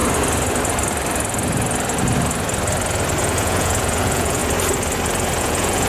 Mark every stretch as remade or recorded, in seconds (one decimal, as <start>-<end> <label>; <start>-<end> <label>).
0.0-3.2 recorded; 3.2-4.4 remade; 4.4-5.4 recorded; 5.4-5.9 remade